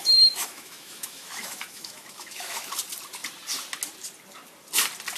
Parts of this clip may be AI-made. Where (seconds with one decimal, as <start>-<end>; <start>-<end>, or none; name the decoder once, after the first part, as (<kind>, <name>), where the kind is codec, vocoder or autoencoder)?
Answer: 0.0-2.7 (autoencoder, DAC-VAE)